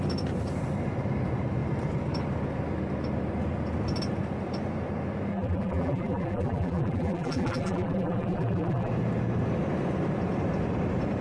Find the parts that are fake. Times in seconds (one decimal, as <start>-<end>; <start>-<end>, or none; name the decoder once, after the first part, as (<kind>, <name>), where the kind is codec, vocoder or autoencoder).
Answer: 5.3-8.9 (vocoder, BigVGAN v2)